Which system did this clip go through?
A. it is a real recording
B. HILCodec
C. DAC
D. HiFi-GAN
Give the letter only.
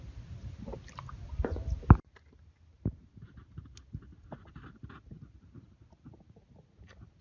A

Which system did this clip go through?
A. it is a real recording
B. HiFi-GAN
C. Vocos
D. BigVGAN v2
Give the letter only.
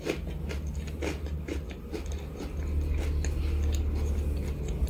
A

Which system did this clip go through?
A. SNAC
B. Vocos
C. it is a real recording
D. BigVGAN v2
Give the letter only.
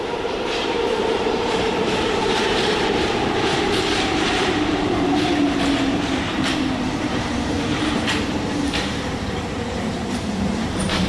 D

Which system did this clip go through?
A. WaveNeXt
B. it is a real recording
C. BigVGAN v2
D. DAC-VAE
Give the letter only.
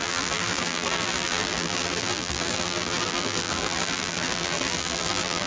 C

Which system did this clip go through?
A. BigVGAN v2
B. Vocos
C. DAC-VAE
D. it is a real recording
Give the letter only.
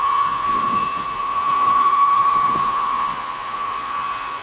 B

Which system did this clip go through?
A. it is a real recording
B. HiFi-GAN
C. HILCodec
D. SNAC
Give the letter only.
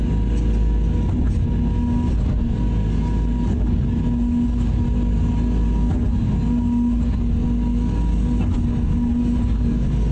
A